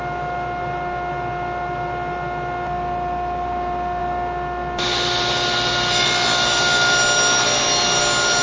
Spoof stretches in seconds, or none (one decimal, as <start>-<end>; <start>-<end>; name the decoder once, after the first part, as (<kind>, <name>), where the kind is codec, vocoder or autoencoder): none